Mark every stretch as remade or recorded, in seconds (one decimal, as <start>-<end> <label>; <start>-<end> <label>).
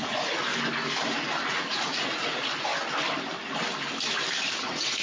0.0-0.5 remade; 0.5-1.5 recorded; 1.5-2.7 remade; 2.7-4.6 recorded; 4.6-5.0 remade